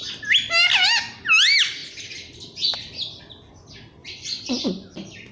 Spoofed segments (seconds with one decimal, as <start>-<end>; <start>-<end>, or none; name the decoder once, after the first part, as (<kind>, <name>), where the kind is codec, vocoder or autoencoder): 4.0-4.5 (vocoder, WaveNeXt)